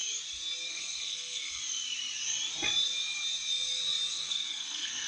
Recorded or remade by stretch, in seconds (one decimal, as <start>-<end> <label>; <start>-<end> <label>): 0.0-0.7 recorded; 0.7-1.6 remade; 1.6-4.1 recorded; 4.1-5.1 remade